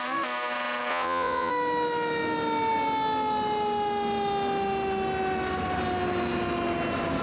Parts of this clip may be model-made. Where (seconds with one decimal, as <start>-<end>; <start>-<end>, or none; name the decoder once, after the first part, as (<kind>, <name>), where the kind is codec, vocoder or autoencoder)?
0.9-1.5 (vocoder, Vocos)

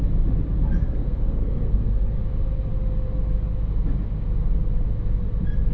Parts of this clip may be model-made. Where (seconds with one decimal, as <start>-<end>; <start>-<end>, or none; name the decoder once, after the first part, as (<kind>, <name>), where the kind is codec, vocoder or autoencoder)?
0.8-2.2 (codec, SNAC)

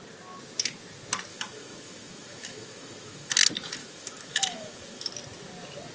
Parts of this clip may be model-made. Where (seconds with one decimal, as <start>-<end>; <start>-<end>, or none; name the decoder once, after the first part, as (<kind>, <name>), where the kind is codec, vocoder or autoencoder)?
1.3-3.3 (autoencoder, DAC-VAE); 3.8-5.1

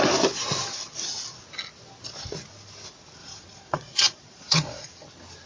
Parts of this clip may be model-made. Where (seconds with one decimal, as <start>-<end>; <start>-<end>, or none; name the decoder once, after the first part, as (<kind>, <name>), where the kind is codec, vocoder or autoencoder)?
3.2-4.9 (vocoder, Vocos)

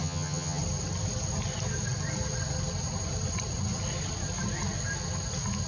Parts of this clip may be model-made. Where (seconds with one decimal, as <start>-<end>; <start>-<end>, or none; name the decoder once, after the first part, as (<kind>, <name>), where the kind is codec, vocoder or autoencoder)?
0.0-0.6 (vocoder, HiFi-GAN)